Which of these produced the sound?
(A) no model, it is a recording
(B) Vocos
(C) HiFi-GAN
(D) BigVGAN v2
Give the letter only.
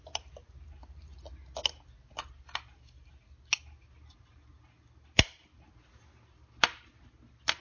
A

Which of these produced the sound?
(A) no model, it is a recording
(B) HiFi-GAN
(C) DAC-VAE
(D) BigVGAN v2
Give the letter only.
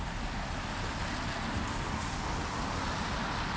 A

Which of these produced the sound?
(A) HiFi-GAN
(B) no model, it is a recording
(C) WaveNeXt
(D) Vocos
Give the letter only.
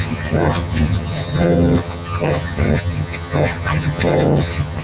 A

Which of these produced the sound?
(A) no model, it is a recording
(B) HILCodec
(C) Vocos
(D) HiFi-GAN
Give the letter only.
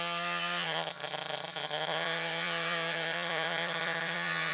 D